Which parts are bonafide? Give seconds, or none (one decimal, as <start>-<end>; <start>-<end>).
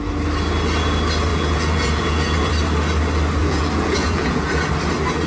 0.0-1.3; 2.5-3.4; 4.7-5.3